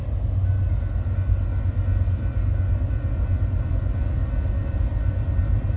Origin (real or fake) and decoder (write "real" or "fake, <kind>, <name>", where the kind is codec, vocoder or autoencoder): real